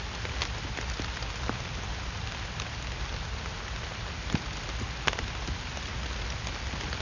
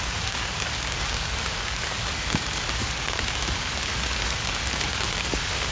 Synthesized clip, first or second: second